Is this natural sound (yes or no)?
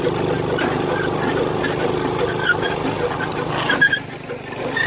yes